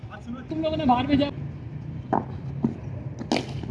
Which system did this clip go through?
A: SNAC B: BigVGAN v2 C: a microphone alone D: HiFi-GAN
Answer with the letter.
C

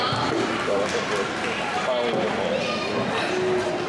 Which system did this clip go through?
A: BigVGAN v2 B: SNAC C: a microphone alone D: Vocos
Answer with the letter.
C